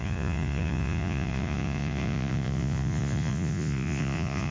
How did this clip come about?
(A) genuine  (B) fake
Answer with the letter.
B